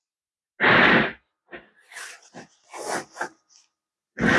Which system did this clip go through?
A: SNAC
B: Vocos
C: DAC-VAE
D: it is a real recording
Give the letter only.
D